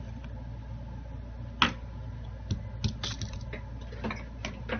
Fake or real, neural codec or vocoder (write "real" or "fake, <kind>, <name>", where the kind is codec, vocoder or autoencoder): real